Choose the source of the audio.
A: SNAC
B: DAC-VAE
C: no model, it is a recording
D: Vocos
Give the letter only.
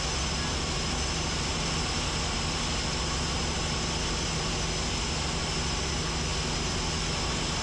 C